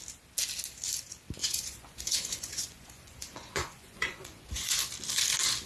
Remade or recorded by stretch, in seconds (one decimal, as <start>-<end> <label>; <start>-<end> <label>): 0.0-1.4 recorded; 1.4-4.8 remade; 4.8-5.7 recorded